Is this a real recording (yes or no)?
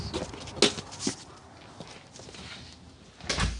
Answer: yes